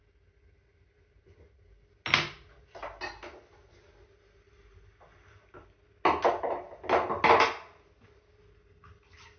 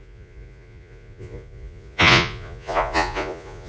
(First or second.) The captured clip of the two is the first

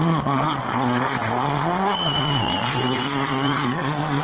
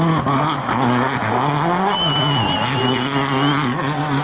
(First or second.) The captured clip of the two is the second